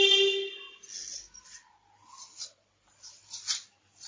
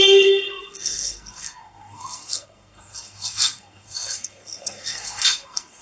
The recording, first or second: first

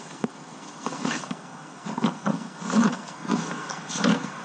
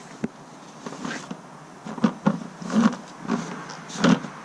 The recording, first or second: second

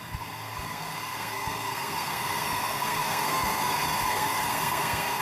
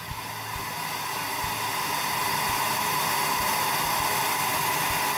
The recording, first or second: second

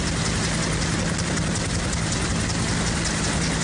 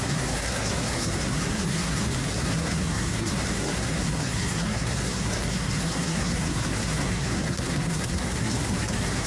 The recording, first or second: first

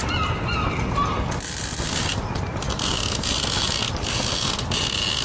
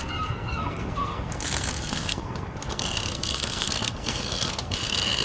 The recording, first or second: first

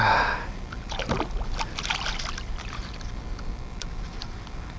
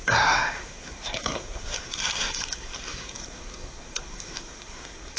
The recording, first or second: first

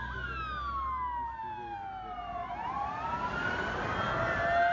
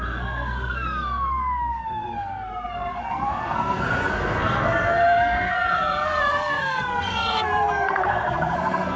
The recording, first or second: first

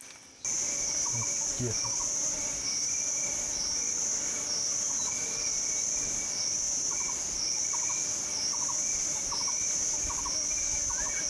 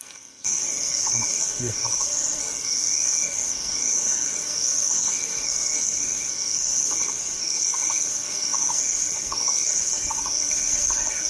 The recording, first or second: first